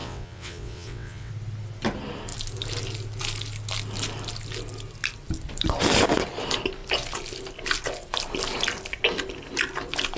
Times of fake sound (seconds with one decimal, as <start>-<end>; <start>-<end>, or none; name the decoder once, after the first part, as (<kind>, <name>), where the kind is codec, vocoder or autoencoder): 0.0-1.3 (vocoder, WaveNeXt)